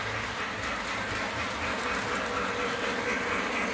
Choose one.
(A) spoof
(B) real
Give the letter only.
B